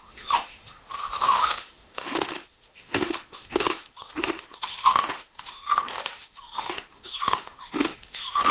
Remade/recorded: remade